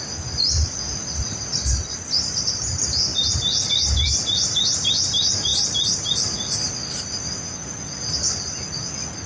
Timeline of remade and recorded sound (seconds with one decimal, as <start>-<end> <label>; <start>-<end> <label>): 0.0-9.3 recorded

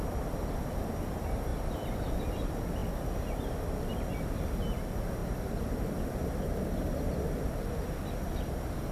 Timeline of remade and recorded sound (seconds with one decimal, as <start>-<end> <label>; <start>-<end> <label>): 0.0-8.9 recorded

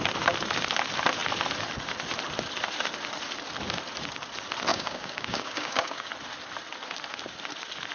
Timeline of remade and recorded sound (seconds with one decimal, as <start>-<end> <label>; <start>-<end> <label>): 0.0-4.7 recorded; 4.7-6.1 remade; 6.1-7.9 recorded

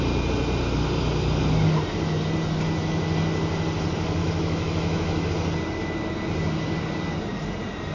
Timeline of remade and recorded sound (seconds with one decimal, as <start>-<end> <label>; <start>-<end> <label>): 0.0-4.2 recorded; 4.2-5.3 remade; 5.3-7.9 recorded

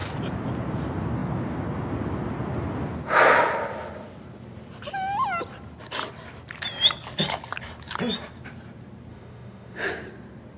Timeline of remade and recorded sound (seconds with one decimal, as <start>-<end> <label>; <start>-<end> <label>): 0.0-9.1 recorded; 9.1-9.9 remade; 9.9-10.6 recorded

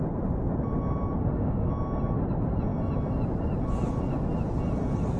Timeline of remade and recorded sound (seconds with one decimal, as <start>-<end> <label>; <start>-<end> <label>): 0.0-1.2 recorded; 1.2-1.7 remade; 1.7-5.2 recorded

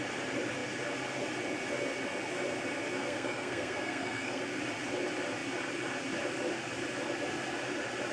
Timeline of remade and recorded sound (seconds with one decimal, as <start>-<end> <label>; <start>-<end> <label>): 0.0-3.0 recorded; 3.0-4.4 remade; 4.4-8.1 recorded

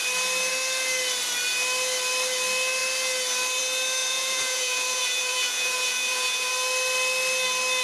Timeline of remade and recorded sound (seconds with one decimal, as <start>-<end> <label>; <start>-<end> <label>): 0.0-4.0 recorded; 4.0-6.5 remade; 6.5-7.8 recorded